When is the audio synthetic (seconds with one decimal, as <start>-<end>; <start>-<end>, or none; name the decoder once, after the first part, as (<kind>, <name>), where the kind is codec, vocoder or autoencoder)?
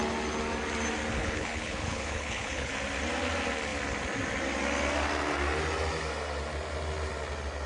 1.2-2.7 (codec, HILCodec)